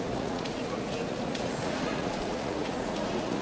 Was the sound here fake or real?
fake